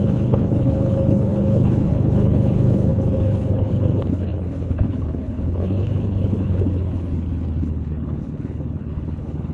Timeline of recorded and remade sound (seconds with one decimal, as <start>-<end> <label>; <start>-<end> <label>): 0.0-9.5 remade